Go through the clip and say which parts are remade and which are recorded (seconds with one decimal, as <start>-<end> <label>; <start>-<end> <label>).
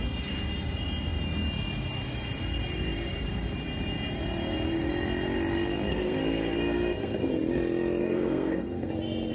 0.0-5.9 recorded; 5.9-7.3 remade; 7.3-8.0 recorded; 8.0-8.9 remade; 8.9-9.3 recorded